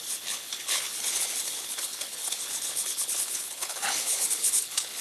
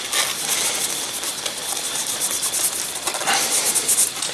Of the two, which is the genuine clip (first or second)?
second